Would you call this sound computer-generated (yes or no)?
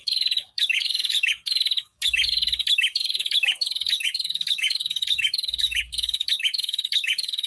yes